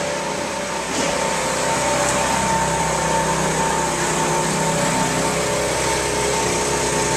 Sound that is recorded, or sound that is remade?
recorded